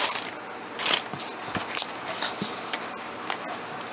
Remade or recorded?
recorded